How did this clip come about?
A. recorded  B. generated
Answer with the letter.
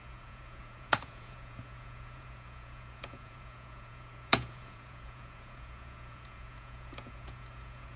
B